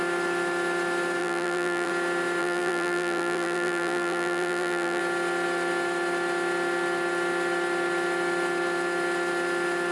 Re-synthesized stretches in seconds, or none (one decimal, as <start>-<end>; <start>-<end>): 1.2-1.9; 2.4-5.0